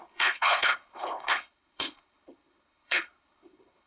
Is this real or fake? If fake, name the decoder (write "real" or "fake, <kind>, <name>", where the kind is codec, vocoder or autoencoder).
fake, codec, HILCodec